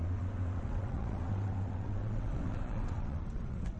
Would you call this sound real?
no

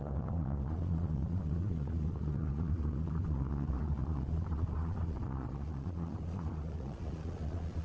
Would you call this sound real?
no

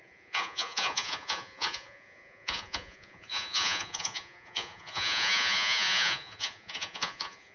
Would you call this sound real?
no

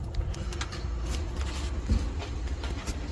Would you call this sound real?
yes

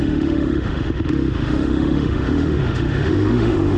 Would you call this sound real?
no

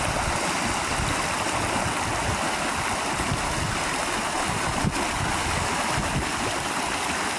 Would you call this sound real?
yes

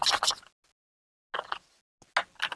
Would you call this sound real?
yes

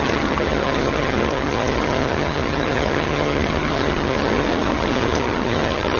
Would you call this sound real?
no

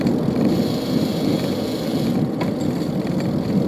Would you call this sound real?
yes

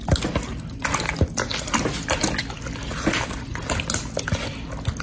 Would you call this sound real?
yes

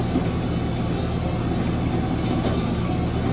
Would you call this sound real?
yes